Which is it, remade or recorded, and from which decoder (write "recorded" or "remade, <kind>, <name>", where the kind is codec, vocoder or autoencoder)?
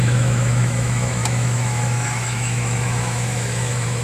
remade, autoencoder, DAC-VAE